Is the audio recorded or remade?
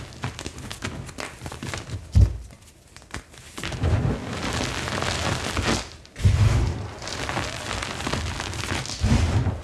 recorded